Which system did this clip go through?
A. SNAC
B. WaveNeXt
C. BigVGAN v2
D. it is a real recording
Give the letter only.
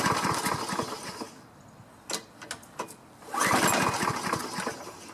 D